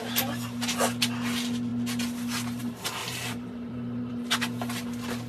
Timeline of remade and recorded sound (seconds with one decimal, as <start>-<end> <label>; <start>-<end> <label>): 0.0-3.0 recorded; 3.0-4.1 remade; 4.1-5.3 recorded